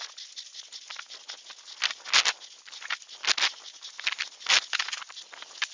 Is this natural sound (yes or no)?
yes